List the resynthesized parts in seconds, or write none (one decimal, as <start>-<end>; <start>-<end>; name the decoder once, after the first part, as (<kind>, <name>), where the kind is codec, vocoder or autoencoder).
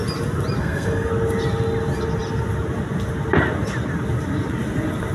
0.6-1.1 (codec, SNAC)